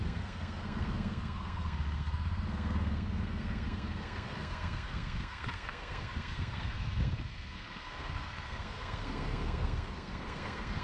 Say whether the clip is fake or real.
fake